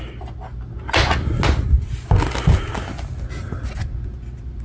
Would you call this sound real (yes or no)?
yes